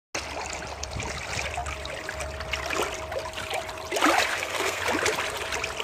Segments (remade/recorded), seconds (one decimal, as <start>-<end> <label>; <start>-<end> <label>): 0.0-4.3 recorded; 4.3-4.8 remade; 4.8-5.8 recorded